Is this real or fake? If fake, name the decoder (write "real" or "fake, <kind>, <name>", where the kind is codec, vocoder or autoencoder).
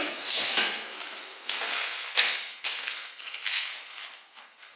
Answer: fake, codec, SNAC